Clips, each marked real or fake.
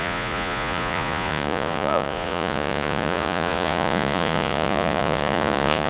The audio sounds fake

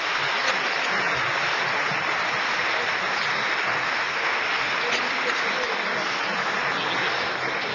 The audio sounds real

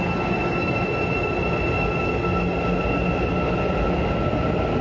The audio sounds real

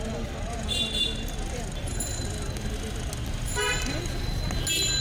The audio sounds real